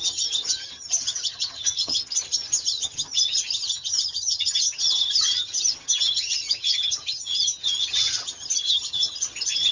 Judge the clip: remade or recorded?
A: remade